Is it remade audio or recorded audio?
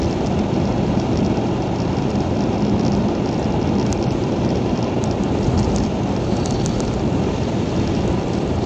remade